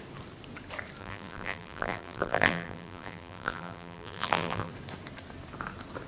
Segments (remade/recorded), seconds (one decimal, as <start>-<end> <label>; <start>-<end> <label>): 0.0-1.0 recorded; 1.0-4.7 remade; 4.7-6.1 recorded